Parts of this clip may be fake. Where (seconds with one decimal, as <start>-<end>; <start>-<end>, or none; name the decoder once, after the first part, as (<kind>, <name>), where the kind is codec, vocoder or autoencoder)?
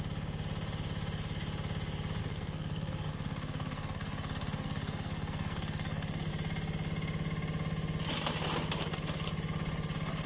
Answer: 2.2-6.3 (codec, SNAC)